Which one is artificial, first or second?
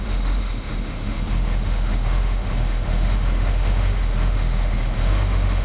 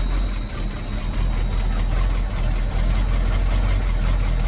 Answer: first